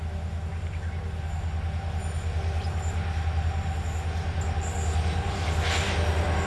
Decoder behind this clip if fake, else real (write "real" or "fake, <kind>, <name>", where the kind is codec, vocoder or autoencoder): real